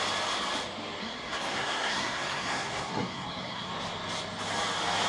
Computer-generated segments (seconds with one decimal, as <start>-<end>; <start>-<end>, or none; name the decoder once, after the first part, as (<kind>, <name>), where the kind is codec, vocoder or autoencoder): 1.0-3.7 (codec, SNAC)